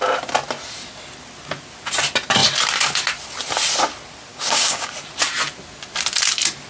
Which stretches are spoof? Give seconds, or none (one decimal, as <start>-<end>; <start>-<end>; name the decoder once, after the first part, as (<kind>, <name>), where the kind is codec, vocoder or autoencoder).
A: 4.3-4.9 (codec, DAC)